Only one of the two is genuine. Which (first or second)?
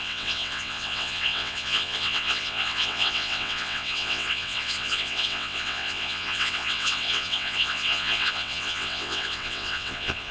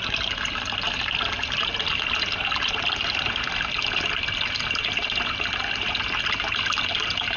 second